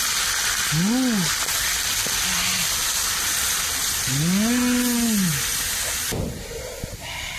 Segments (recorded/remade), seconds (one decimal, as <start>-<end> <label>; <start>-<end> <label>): 0.0-7.4 recorded